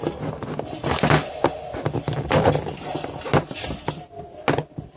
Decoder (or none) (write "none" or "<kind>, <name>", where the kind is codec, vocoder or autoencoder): none